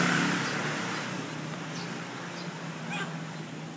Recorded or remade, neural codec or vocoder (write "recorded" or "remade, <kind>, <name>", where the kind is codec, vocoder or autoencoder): recorded